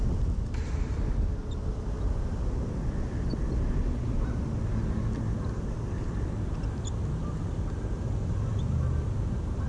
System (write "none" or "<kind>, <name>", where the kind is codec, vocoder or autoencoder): none